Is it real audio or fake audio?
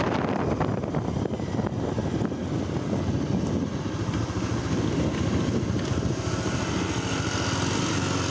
real